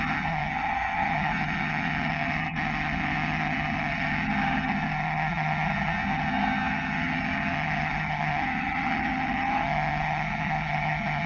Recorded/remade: remade